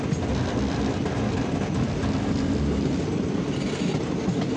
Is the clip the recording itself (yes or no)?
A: yes